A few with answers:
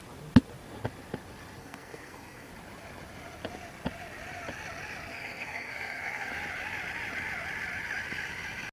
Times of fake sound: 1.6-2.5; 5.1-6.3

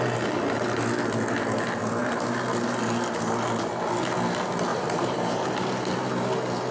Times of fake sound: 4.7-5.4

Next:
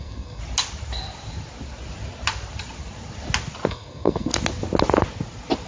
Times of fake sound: 0.0-0.4; 3.7-4.3